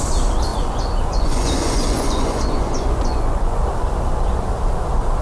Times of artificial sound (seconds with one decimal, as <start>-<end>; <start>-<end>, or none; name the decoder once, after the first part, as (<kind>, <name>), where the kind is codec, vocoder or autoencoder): 0.5-3.6 (vocoder, Vocos)